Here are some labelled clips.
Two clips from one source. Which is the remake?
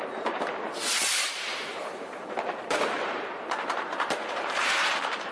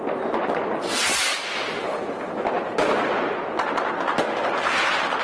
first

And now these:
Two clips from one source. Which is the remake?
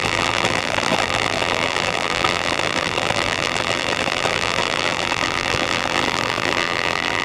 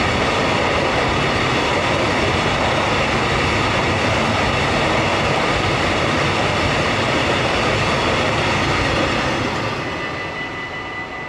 first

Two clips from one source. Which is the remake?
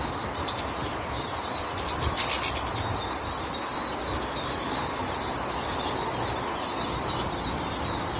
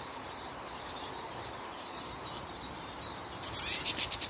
second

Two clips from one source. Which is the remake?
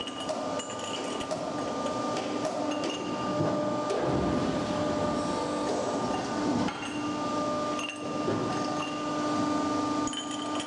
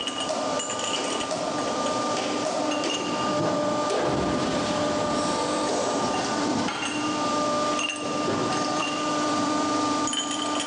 second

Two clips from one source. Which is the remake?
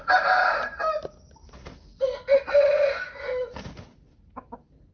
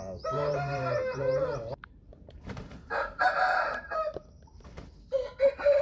second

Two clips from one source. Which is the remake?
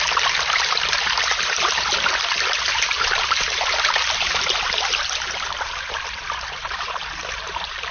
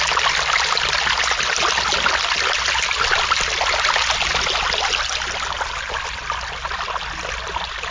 first